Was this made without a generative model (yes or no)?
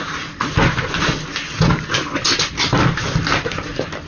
yes